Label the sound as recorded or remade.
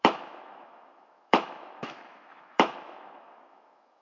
remade